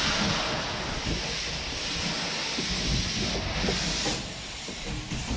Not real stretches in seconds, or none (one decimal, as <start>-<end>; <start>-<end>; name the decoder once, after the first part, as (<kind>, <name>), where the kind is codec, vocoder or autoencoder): none